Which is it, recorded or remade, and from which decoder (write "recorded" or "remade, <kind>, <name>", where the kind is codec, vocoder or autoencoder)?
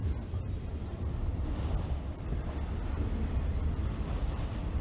remade, vocoder, BigVGAN v2